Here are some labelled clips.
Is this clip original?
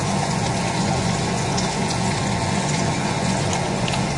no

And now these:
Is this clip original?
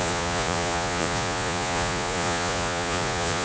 no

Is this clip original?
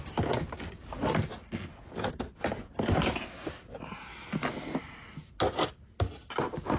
yes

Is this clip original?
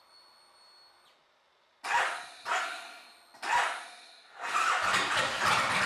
yes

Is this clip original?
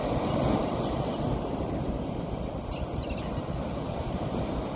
yes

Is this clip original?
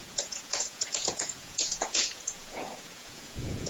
no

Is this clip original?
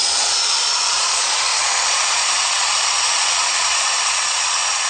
no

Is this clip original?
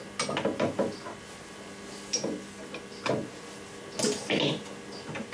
yes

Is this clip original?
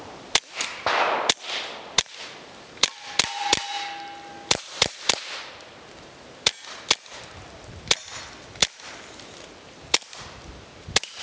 yes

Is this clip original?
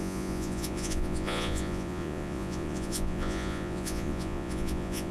no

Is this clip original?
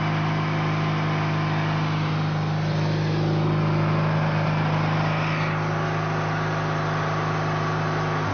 yes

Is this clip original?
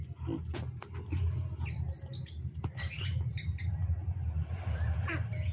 yes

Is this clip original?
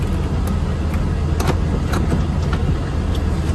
yes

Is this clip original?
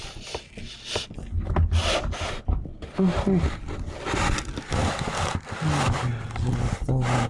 yes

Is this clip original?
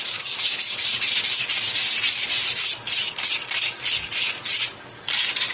yes